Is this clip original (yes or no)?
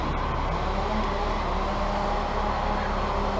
yes